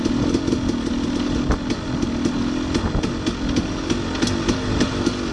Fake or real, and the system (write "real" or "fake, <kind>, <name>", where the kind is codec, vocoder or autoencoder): real